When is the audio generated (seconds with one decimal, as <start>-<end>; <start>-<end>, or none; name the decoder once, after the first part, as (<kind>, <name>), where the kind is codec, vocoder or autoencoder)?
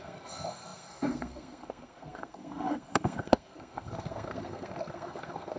0.0-5.6 (codec, SNAC)